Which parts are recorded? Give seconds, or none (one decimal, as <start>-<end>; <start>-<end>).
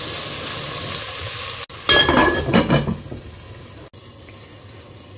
0.0-5.2